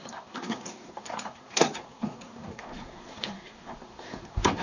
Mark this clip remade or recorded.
remade